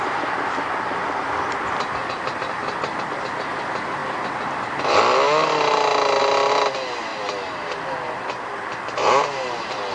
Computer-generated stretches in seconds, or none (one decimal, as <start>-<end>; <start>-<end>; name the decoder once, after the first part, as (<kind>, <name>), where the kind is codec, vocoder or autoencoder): 2.6-3.3 (vocoder, BigVGAN v2); 7.1-7.9